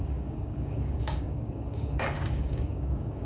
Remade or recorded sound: remade